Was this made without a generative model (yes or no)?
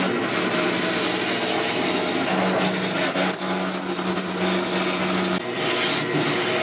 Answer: yes